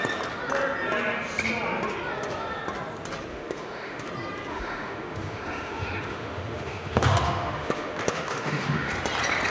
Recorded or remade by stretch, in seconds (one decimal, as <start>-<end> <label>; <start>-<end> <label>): 0.0-3.3 recorded; 3.3-4.1 remade; 4.1-4.5 recorded; 4.5-8.9 remade; 8.9-9.5 recorded